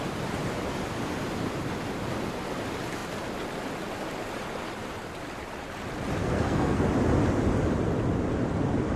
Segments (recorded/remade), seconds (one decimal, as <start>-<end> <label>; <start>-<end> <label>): 0.0-6.2 recorded; 6.2-6.8 remade; 6.8-9.0 recorded